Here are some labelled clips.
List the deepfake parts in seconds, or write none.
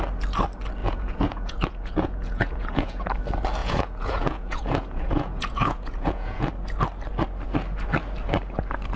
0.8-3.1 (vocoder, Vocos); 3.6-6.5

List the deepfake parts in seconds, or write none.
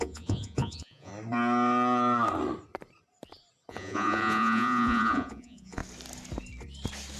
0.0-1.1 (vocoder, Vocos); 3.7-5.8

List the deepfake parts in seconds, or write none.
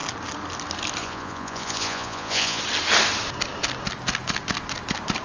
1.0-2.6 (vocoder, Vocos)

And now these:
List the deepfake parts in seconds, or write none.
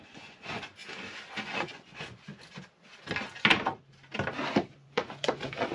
0.0-0.8 (vocoder, Vocos); 1.4-2.3; 4.8-5.7